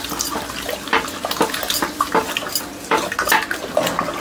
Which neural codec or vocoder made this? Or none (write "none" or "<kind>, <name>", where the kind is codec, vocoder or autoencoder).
none